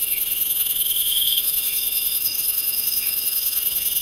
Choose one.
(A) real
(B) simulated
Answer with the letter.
B